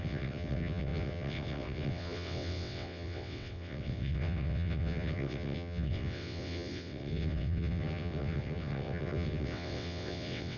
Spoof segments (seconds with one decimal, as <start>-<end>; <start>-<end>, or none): 0.0-10.6